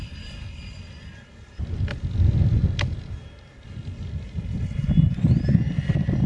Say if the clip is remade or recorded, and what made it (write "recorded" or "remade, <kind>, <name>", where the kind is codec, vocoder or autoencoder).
recorded